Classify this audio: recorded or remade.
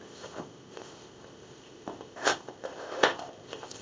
remade